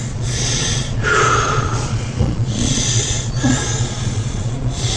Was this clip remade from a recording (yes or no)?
yes